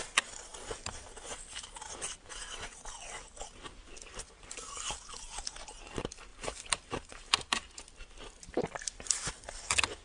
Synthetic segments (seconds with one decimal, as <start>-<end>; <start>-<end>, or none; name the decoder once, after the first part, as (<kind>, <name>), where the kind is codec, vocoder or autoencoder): 6.3-7.8 (vocoder, BigVGAN v2)